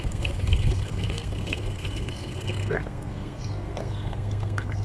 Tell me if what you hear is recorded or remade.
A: remade